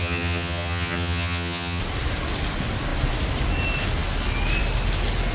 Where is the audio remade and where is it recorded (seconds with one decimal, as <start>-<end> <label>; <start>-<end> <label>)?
0.0-1.8 remade; 1.8-5.3 recorded